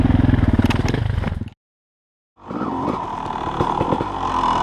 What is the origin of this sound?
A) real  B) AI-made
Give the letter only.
A